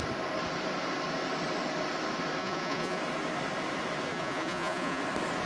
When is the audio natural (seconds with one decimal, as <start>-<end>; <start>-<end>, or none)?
0.0-2.4; 3.0-4.1; 5.0-5.5